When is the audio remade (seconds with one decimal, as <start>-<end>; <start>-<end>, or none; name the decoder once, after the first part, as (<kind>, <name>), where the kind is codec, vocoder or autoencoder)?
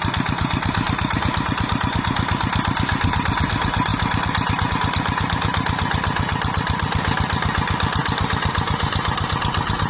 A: none